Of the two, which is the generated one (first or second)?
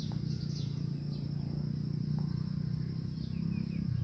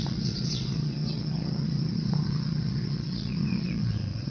second